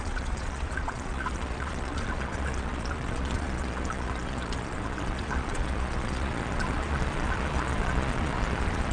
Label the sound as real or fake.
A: fake